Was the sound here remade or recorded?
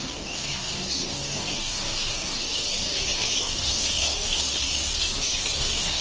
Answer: remade